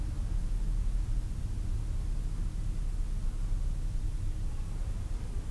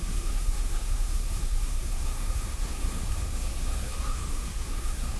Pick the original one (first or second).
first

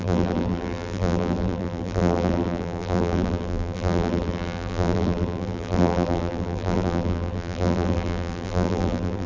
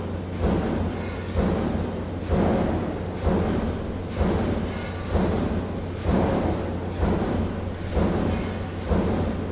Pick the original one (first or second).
second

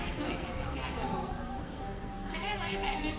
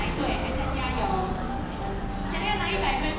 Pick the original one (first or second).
second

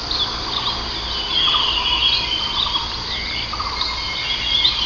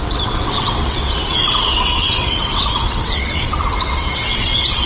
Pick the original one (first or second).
first